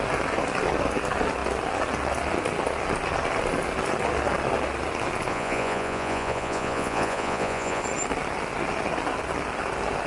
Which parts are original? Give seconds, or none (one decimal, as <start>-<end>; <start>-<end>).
0.0-5.3; 7.8-10.1